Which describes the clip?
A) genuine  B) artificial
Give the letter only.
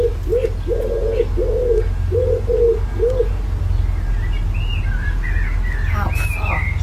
A